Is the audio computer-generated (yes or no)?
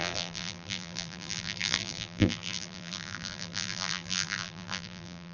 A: yes